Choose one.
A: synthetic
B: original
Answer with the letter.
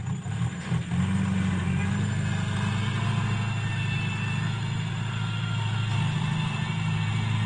B